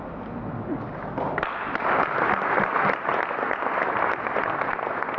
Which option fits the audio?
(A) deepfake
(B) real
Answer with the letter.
B